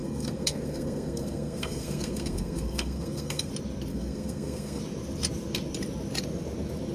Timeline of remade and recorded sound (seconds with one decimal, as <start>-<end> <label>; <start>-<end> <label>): 0.0-3.5 remade; 3.5-3.9 recorded; 3.9-4.8 remade; 4.8-6.9 recorded